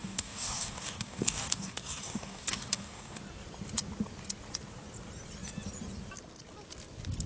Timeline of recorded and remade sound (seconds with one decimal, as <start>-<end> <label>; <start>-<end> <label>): 0.0-3.2 remade; 3.2-7.3 recorded